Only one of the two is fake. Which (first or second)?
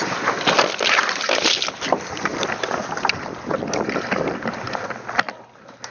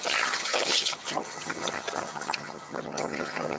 second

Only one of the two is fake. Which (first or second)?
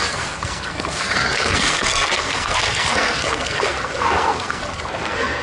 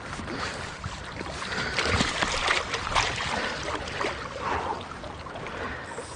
first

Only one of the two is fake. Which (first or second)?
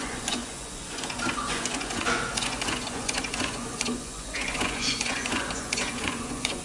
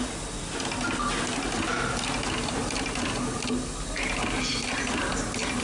first